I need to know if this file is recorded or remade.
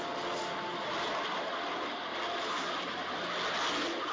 recorded